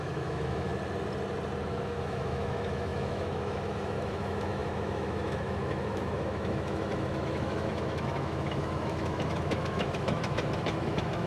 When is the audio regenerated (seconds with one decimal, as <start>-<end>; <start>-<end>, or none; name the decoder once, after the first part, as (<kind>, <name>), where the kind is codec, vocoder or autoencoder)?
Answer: 0.0-0.7 (autoencoder, DAC-VAE); 1.7-11.3